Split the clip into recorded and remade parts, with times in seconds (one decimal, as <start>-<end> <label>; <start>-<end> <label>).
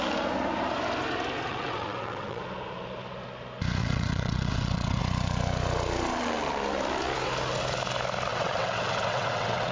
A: 0.0-1.5 recorded; 1.5-2.4 remade; 2.4-3.8 recorded; 3.8-5.0 remade; 5.0-8.3 recorded; 8.3-9.7 remade